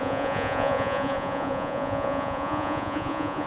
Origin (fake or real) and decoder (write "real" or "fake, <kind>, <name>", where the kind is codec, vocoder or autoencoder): fake, vocoder, Vocos